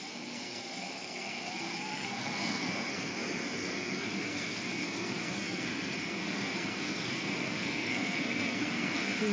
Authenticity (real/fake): fake